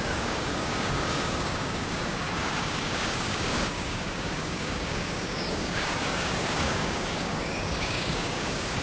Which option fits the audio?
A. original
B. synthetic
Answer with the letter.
B